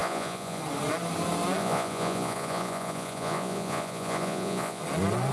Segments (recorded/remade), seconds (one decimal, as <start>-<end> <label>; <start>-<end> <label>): 0.0-0.6 remade; 0.6-1.6 recorded; 1.6-4.8 remade; 4.8-5.3 recorded